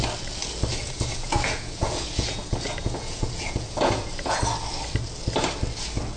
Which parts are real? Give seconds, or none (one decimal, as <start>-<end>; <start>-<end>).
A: 0.0-0.7; 4.4-6.2